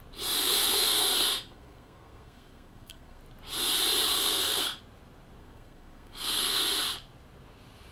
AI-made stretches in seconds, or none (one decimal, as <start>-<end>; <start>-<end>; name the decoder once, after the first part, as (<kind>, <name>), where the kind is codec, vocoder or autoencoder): 0.4-3.2 (codec, SNAC); 4.1-4.8; 5.4-6.6